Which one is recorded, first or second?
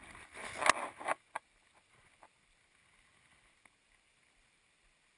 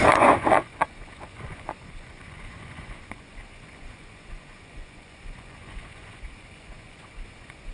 first